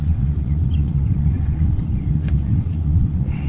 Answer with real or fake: fake